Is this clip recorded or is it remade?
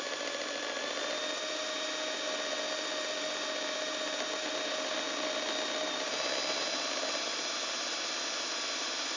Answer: recorded